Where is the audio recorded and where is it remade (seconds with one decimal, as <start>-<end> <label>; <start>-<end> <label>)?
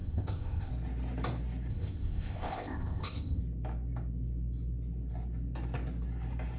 0.0-0.7 remade; 0.7-1.7 recorded; 1.7-3.4 remade; 3.4-6.6 recorded